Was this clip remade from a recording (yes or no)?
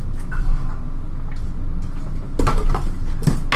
no